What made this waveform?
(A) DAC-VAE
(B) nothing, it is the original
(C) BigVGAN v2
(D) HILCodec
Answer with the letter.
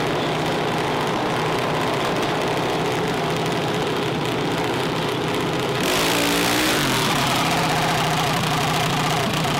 B